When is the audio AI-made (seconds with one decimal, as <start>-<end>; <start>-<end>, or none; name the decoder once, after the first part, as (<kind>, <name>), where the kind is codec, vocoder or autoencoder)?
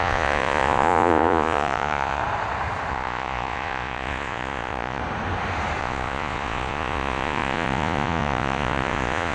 0.0-2.2 (vocoder, Vocos); 2.9-5.0; 5.8-9.3